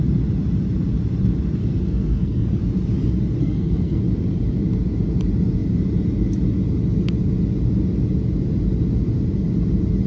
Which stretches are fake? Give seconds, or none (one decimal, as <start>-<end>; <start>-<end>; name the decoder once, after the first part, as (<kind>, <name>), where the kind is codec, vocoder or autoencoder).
1.6-2.6 (codec, SNAC); 3.4-4.0